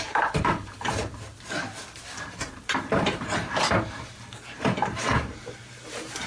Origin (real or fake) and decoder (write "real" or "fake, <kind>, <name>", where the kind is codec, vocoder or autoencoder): fake, vocoder, BigVGAN v2